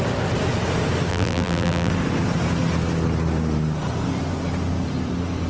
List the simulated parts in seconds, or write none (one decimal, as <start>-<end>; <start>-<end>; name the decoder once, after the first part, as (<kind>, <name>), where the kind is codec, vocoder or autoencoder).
1.1-1.9 (vocoder, BigVGAN v2)

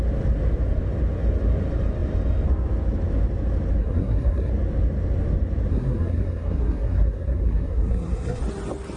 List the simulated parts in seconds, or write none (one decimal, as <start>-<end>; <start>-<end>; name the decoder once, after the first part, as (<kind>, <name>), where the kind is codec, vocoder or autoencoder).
3.8-4.5 (codec, SNAC); 5.7-8.4

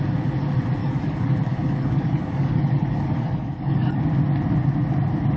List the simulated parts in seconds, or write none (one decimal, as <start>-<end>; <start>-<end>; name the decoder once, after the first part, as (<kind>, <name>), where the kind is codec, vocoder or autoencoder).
0.8-4.0 (codec, DAC)

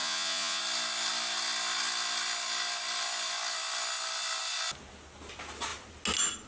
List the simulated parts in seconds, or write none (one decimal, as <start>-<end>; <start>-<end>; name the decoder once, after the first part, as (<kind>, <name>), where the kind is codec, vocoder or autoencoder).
0.0-0.6 (vocoder, Vocos)